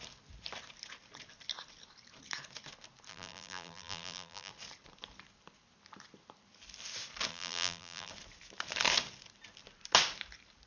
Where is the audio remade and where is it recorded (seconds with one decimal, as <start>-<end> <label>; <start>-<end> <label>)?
0.0-3.1 recorded; 3.1-4.5 remade; 4.5-7.3 recorded; 7.3-8.1 remade; 8.1-10.7 recorded